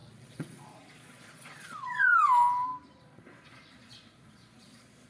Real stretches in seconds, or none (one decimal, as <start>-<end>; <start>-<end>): 2.1-3.0